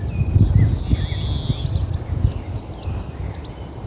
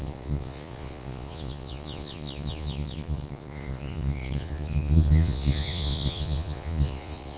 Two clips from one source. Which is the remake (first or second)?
second